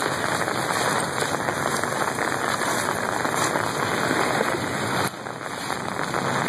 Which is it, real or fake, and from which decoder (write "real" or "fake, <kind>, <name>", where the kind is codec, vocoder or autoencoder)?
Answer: real